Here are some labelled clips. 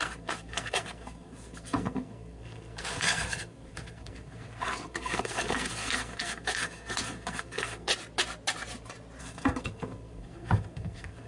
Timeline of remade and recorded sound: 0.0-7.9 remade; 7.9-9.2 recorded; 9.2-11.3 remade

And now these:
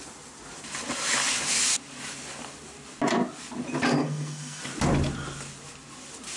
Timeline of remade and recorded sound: 0.0-4.0 recorded; 4.0-4.6 remade; 4.6-6.4 recorded

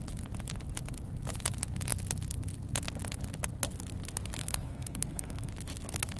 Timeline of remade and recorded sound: 0.0-4.4 recorded; 4.4-5.5 remade; 5.5-6.2 recorded

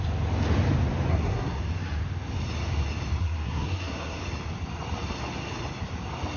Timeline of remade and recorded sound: 0.0-1.1 recorded; 1.1-1.6 remade; 1.6-3.2 recorded; 3.2-4.2 remade; 4.2-6.4 recorded

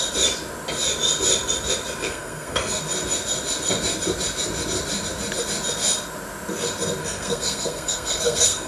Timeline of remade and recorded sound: 0.0-2.0 recorded; 2.0-2.8 remade; 2.8-7.0 recorded; 7.0-8.7 remade

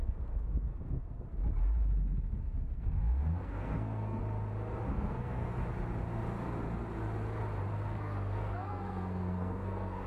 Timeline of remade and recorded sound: 0.0-1.4 remade; 1.4-2.2 recorded; 2.2-4.2 remade; 4.2-4.9 recorded; 4.9-5.6 remade; 5.6-7.7 recorded; 7.7-10.1 remade

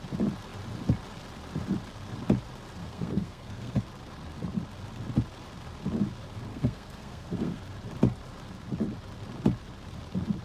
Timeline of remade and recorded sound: 0.0-2.8 recorded; 2.8-3.8 remade; 3.8-6.5 recorded; 6.5-7.6 remade; 7.6-10.4 recorded

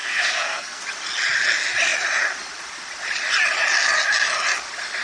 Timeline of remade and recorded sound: 0.0-0.8 remade; 0.8-5.0 recorded